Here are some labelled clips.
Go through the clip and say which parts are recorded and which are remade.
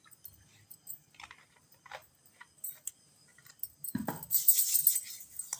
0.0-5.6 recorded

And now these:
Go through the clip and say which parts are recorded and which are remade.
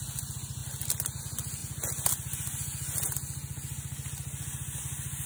0.0-5.3 recorded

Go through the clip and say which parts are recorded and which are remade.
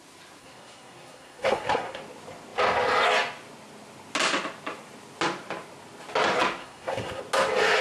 0.0-0.4 recorded; 0.4-2.0 remade; 2.0-6.6 recorded; 6.6-7.2 remade; 7.2-7.8 recorded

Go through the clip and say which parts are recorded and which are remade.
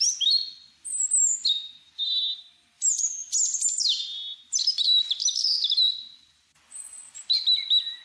0.0-0.9 recorded; 0.9-1.5 remade; 1.5-3.2 recorded; 3.2-7.5 remade; 7.5-8.0 recorded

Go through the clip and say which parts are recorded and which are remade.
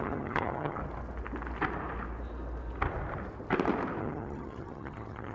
0.0-0.8 remade; 0.8-4.0 recorded; 4.0-5.3 remade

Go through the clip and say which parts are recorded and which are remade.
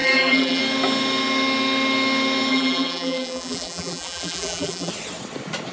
0.0-0.6 remade; 0.6-2.5 recorded; 2.5-4.9 remade; 4.9-5.7 recorded